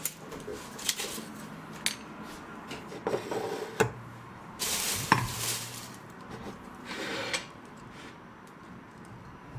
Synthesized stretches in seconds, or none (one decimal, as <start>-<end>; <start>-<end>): 0.0-0.5; 3.9-9.6